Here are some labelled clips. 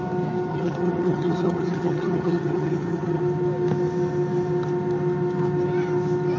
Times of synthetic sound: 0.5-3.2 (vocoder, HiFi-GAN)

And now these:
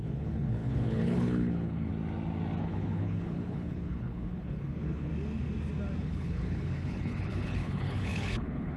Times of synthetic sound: 0.0-1.9 (codec, HILCodec); 2.6-5.1; 6.0-8.8

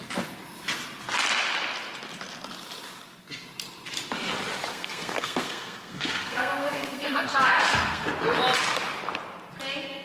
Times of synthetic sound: 4.7-8.1 (codec, SNAC)

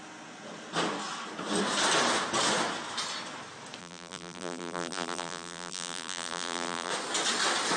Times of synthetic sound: 3.8-6.9 (vocoder, BigVGAN v2)

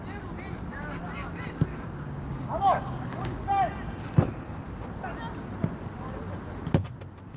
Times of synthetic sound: 1.7-3.5 (codec, DAC)

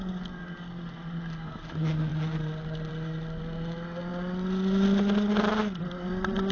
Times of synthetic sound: none

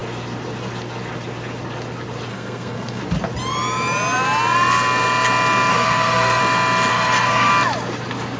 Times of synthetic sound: 2.3-3.0 (codec, SNAC); 5.7-6.4; 6.9-7.5

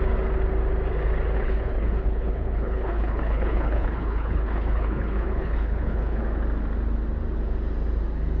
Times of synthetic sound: 1.3-6.2 (codec, HILCodec)